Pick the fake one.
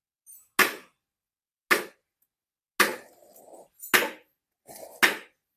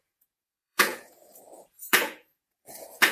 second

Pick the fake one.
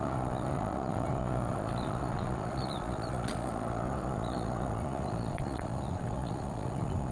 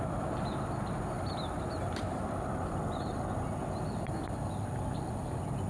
first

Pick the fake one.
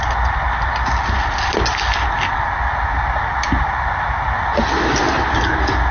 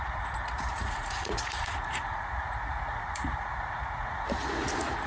second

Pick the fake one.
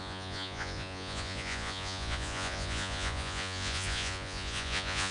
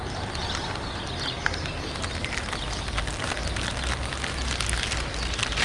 first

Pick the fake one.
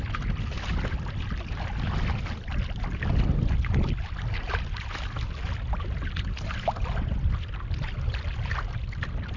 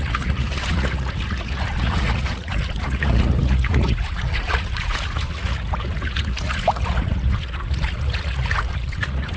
second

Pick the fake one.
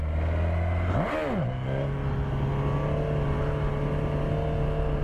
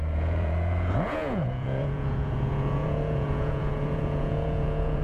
second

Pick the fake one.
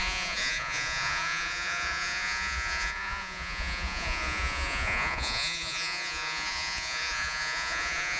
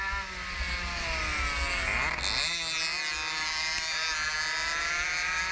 first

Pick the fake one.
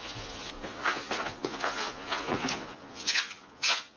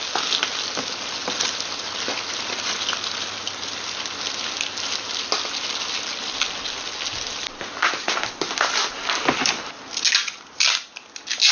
first